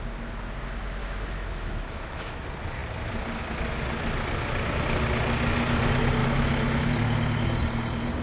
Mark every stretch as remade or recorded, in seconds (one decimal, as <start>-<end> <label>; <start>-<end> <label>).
0.0-1.0 recorded; 1.0-2.4 remade; 2.4-6.2 recorded; 6.2-6.9 remade; 6.9-8.2 recorded